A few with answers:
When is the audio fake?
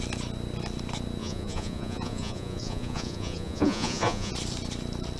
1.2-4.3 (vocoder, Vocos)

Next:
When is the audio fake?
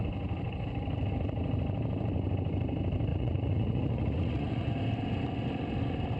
3.1-4.7 (vocoder, Vocos)